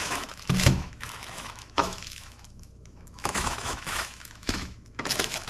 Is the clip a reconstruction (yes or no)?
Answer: yes